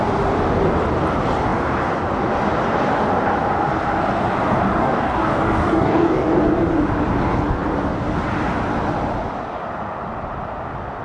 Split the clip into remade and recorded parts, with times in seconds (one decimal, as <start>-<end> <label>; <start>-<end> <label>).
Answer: 0.0-4.8 recorded; 4.8-6.4 remade; 6.4-11.0 recorded